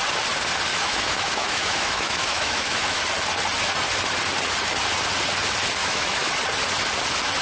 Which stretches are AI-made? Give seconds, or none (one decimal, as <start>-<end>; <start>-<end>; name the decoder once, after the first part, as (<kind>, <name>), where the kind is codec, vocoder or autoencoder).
0.7-3.0 (autoencoder, DAC-VAE); 5.8-6.3